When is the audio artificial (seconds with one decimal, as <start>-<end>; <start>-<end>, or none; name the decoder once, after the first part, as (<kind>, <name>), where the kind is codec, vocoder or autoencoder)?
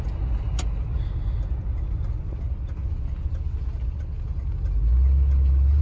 none